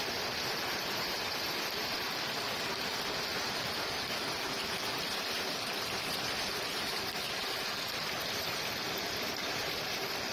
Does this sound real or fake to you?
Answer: real